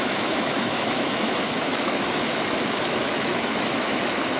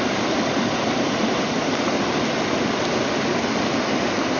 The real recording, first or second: second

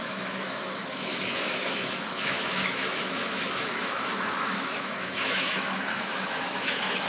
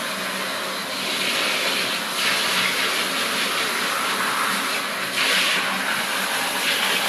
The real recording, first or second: second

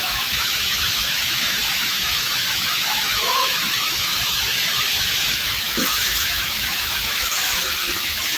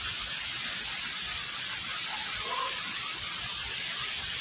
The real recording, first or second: second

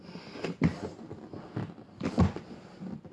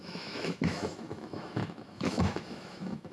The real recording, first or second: first